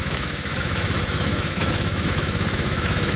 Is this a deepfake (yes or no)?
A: yes